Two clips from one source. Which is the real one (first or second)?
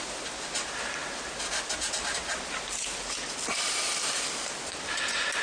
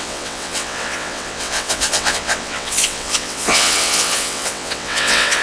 first